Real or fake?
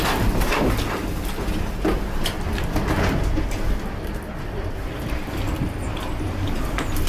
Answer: real